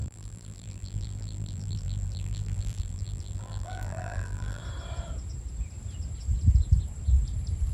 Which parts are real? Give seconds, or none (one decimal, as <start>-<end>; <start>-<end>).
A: 4.6-7.7

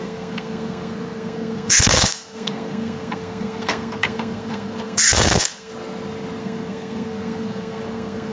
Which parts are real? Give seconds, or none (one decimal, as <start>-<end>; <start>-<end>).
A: 5.7-6.4